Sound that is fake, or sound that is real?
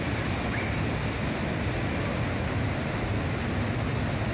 real